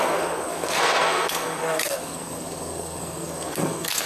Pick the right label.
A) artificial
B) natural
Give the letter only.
A